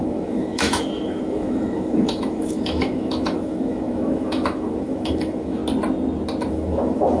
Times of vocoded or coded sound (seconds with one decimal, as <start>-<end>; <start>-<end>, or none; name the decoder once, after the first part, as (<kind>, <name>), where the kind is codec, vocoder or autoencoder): 0.0-5.6 (autoencoder, DAC-VAE); 6.5-7.2